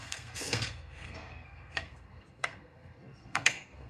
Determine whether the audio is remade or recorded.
remade